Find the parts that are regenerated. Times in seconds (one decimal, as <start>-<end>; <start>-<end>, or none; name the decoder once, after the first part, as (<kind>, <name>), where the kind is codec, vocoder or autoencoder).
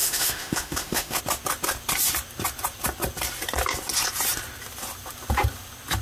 0.0-1.2 (autoencoder, DAC-VAE)